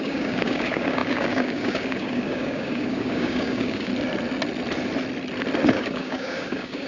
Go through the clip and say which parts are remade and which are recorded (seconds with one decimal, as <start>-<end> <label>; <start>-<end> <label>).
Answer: 0.0-3.9 remade; 3.9-5.7 recorded; 5.7-6.9 remade